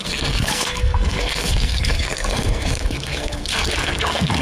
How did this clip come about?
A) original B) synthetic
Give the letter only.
B